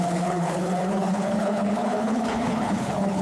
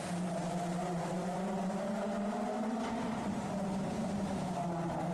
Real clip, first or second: second